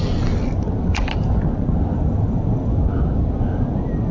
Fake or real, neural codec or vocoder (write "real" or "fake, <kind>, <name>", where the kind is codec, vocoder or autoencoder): real